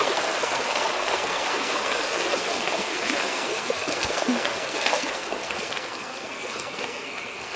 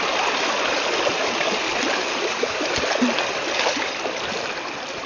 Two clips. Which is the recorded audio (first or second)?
second